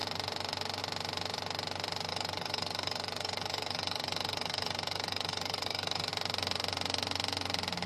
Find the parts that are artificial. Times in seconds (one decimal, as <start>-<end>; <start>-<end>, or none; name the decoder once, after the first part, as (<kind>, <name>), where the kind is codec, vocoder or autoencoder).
2.1-6.1 (codec, DAC)